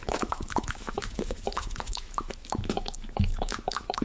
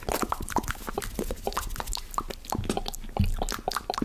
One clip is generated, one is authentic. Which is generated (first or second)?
first